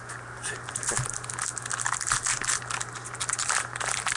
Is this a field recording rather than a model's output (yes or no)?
yes